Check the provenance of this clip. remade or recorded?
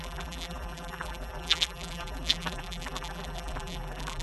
remade